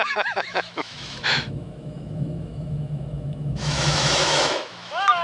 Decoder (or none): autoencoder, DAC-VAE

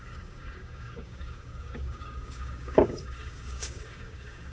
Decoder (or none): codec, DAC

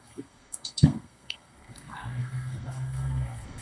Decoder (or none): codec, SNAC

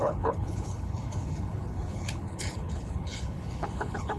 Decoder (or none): codec, HILCodec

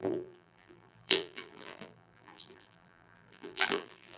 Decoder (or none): vocoder, BigVGAN v2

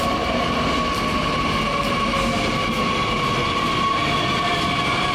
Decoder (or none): none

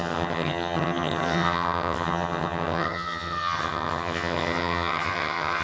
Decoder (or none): vocoder, HiFi-GAN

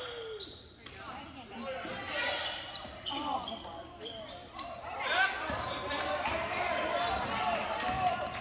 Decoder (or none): none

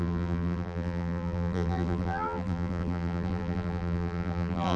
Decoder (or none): vocoder, BigVGAN v2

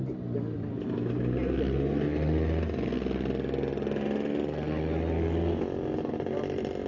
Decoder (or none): none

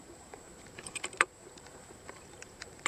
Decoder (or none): vocoder, BigVGAN v2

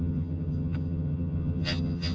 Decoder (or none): vocoder, HiFi-GAN